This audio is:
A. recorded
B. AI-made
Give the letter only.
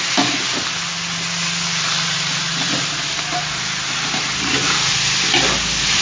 A